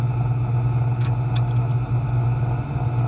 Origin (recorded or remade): recorded